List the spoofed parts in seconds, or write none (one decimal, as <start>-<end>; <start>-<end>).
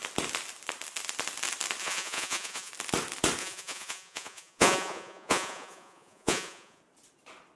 1.8-2.7; 3.4-6.8